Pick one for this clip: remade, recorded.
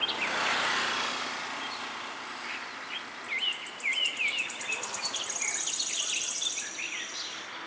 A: recorded